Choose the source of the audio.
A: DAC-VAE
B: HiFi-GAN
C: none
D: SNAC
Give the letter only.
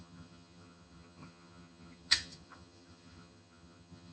B